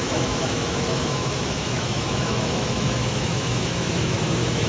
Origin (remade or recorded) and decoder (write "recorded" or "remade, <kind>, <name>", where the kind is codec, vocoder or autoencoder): remade, autoencoder, DAC-VAE